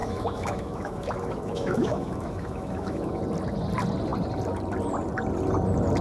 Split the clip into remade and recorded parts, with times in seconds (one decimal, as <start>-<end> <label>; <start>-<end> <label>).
0.0-3.2 remade; 3.2-6.0 recorded